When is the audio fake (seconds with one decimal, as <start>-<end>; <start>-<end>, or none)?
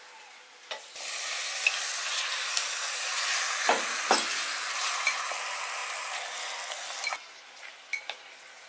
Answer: none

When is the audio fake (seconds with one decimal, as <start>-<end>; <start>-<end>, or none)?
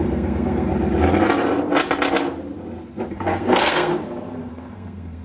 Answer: 0.0-0.7; 3.1-3.9; 4.5-5.2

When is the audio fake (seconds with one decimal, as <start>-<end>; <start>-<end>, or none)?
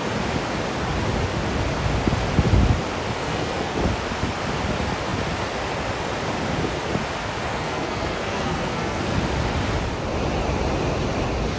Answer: 3.2-3.8; 7.5-9.2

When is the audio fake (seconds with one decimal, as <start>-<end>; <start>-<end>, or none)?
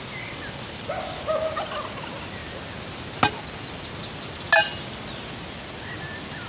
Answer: none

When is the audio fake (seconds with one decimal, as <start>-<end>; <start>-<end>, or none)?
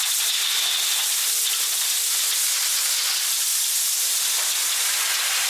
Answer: none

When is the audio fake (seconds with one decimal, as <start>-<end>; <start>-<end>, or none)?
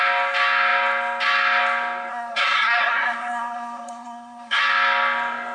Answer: 2.1-4.6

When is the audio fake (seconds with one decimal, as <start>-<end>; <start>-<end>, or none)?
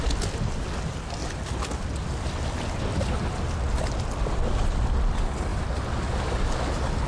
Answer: none